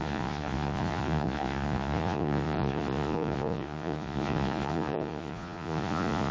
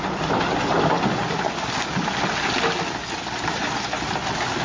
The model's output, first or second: first